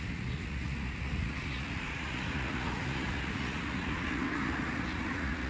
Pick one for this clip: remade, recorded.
remade